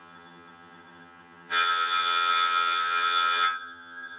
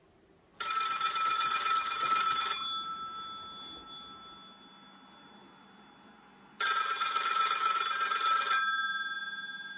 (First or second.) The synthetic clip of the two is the first